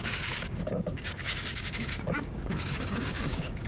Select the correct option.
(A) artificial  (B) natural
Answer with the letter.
A